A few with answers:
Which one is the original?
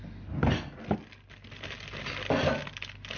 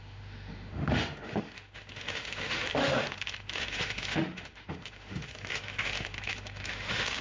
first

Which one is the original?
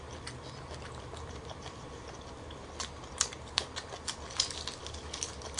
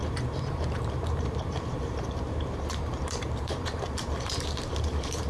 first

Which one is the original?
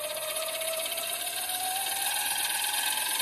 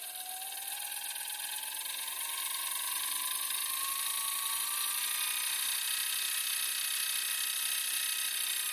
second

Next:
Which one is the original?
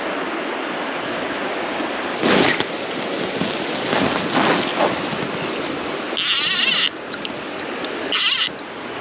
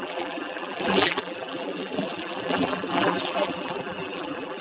first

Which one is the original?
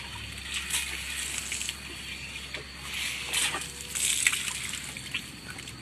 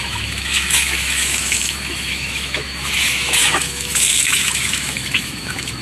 first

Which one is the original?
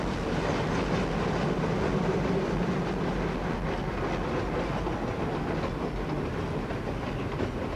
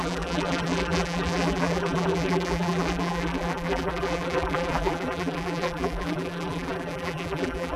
first